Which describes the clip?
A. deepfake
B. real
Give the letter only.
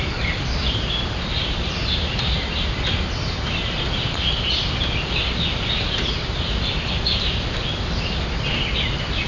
B